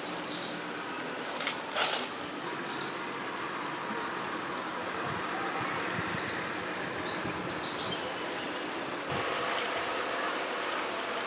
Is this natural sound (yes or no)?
yes